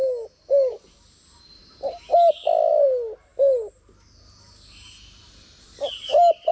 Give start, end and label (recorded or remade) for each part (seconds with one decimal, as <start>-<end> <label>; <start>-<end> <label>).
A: 0.0-6.5 recorded